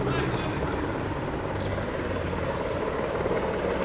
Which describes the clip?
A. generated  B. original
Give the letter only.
B